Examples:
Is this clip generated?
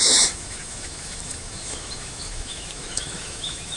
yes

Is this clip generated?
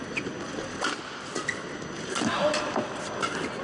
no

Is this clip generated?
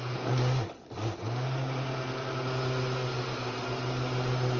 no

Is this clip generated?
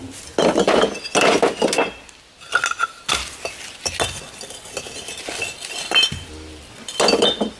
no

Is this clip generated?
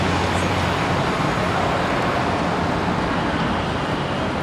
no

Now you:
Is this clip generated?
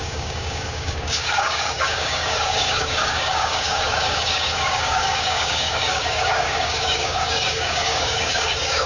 yes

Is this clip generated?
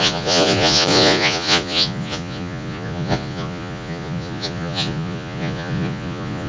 yes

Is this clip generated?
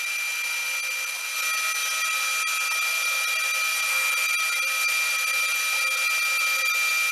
no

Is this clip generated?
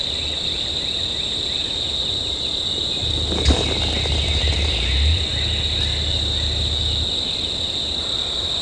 no